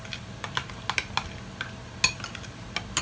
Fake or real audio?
real